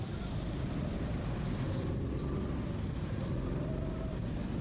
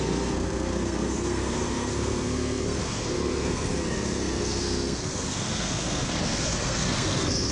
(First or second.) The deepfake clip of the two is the second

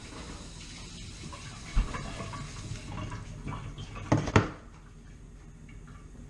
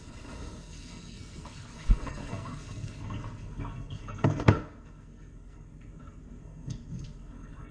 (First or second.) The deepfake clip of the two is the second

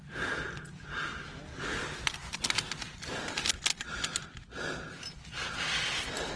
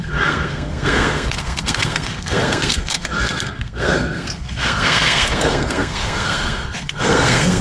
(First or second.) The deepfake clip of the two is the second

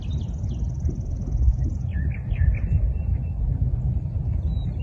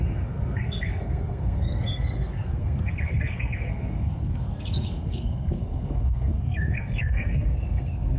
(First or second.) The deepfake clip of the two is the second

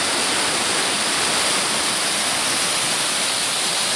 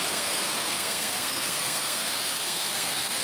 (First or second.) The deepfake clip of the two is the second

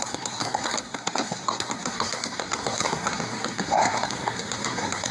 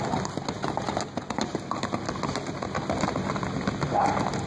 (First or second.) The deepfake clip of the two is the first